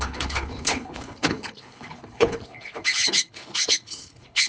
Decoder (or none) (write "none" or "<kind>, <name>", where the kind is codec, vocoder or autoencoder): codec, HILCodec